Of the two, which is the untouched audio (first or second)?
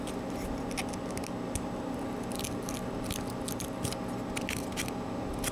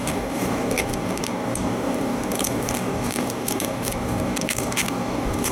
first